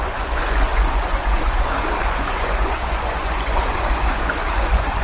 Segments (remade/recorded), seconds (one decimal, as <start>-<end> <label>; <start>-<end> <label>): 0.0-5.0 remade